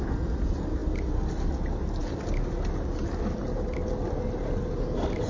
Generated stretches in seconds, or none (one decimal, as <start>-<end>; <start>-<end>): none